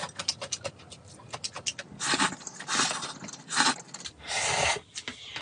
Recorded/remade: recorded